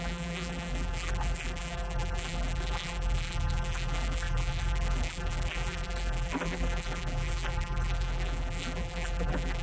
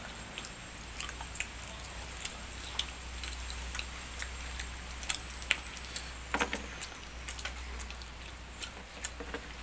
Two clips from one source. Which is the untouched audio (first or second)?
second